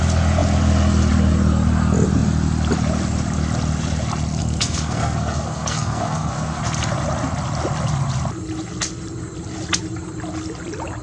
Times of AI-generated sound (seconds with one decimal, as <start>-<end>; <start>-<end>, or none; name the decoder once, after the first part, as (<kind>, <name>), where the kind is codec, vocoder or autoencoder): 4.4-6.6 (codec, SNAC)